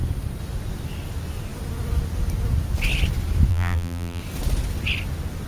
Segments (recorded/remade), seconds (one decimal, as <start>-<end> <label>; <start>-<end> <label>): 0.0-3.5 recorded; 3.5-4.2 remade; 4.2-5.5 recorded